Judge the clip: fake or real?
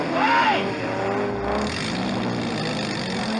real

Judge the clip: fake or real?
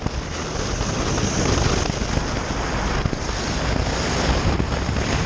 real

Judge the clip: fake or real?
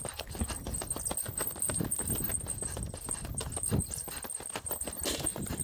real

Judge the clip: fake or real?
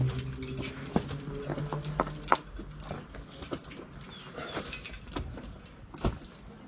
real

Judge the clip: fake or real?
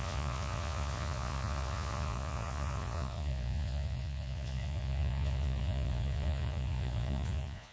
fake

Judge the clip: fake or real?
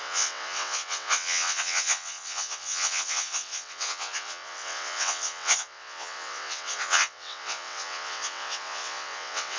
fake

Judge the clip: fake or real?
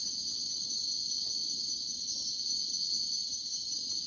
real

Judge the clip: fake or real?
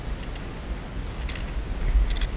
real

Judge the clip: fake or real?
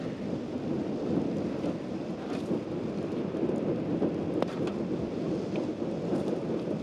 real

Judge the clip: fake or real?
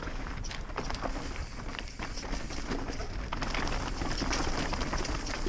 real